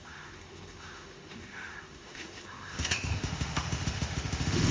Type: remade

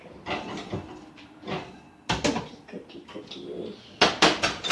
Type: recorded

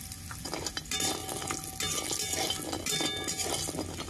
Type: recorded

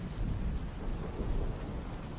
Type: recorded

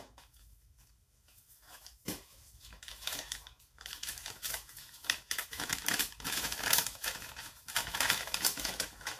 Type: remade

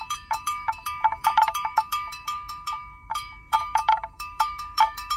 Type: remade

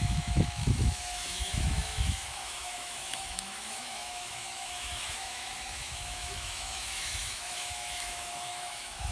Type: remade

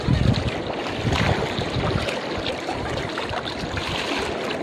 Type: recorded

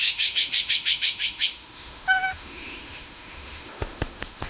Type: remade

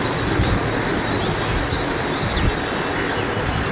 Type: recorded